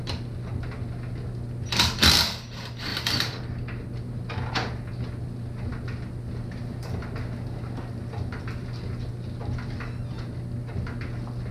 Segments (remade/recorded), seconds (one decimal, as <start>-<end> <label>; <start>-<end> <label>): 0.0-2.9 recorded; 2.9-3.4 remade; 3.4-11.5 recorded